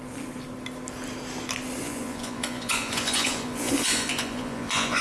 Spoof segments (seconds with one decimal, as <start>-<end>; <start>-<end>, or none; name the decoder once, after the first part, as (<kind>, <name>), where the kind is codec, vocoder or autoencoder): 1.8-5.0 (vocoder, Vocos)